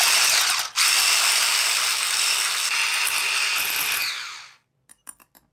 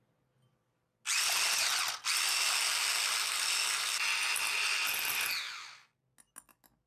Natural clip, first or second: second